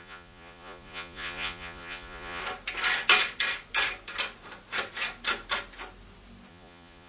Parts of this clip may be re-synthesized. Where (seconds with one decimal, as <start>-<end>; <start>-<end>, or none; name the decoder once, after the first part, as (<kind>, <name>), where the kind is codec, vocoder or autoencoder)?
0.0-2.4 (vocoder, Vocos); 6.5-7.1